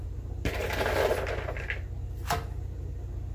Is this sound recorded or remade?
recorded